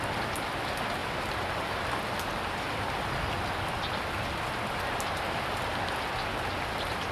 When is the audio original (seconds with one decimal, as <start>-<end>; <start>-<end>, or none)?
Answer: 1.0-5.3; 5.7-6.6